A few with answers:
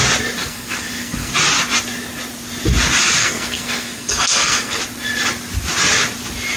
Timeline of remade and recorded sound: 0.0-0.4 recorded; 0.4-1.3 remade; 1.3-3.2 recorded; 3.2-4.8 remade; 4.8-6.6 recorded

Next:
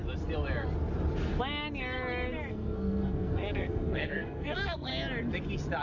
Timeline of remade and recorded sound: 0.0-2.5 recorded; 2.5-4.9 remade; 4.9-5.8 recorded

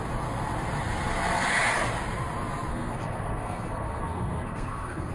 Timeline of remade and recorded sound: 0.0-2.7 recorded; 2.7-5.1 remade

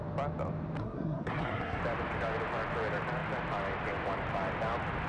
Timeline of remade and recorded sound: 0.0-0.8 recorded; 0.8-1.8 remade; 1.8-5.1 recorded